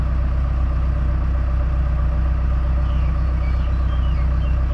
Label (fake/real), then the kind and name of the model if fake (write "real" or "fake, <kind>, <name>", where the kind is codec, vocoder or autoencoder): real